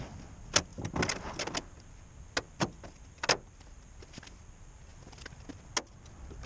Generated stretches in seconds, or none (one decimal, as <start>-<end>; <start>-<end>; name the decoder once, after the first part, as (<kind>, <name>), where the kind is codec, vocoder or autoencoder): none